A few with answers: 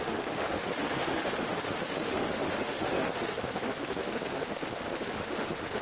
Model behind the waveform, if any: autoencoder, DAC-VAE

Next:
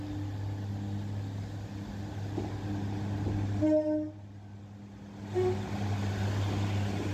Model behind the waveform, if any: none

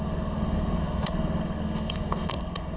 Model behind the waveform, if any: codec, SNAC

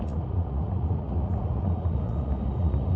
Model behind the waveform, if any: vocoder, Vocos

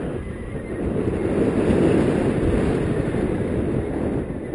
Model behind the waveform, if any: none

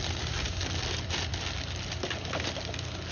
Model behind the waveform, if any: none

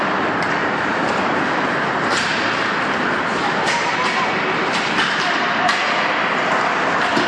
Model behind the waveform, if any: none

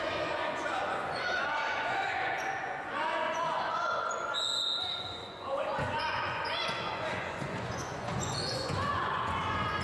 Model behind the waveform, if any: vocoder, Vocos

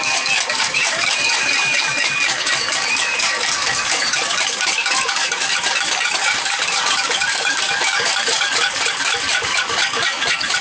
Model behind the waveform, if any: codec, DAC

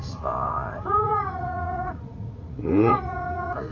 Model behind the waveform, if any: vocoder, Vocos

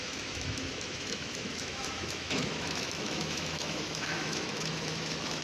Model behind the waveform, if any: autoencoder, DAC-VAE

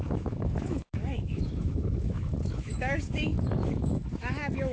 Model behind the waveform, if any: autoencoder, DAC-VAE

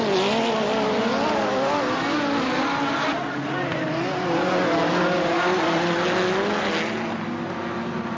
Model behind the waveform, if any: none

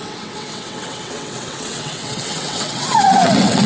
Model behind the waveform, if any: vocoder, WaveNeXt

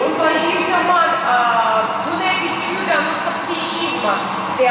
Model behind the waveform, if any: none